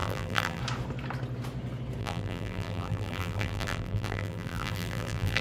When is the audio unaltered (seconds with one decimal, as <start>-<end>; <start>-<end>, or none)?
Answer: 0.6-2.0